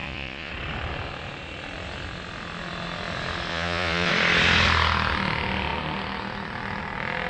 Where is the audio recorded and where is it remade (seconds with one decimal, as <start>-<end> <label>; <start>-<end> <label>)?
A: 0.0-0.5 remade; 0.5-3.5 recorded; 3.5-4.1 remade; 4.1-7.3 recorded